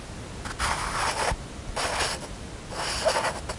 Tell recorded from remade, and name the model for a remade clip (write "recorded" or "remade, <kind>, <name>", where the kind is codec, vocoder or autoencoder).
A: recorded